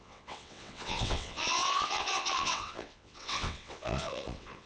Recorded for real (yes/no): no